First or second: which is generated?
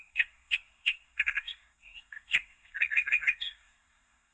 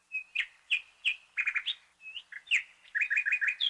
first